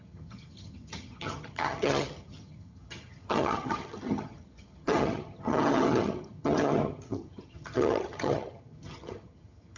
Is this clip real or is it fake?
fake